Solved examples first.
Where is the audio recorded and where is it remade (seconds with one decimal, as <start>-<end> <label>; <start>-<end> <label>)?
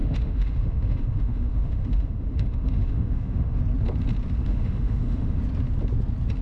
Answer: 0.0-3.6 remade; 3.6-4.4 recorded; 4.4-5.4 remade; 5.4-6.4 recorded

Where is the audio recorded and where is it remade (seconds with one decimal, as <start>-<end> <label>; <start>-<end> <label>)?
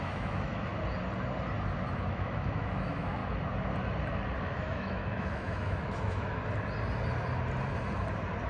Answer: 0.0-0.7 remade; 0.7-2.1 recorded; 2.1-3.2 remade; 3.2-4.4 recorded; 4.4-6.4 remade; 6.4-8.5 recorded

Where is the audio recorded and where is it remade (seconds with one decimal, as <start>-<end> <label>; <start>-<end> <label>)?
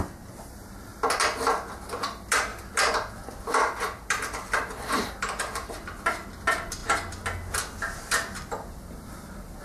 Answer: 0.0-0.9 remade; 0.9-1.9 recorded; 1.9-6.8 remade; 6.8-7.6 recorded; 7.6-9.6 remade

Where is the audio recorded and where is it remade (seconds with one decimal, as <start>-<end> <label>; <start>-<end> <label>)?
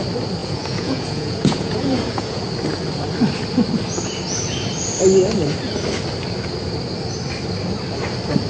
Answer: 0.0-0.4 recorded; 0.4-2.4 remade; 2.4-8.5 recorded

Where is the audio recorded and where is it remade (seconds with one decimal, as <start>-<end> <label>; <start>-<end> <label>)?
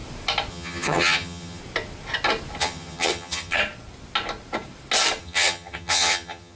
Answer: 0.0-0.5 recorded; 0.5-1.6 remade; 1.6-2.6 recorded; 2.6-3.6 remade; 3.6-5.2 recorded; 5.2-6.6 remade